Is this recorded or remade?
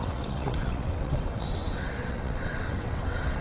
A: remade